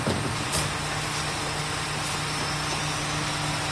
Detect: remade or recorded recorded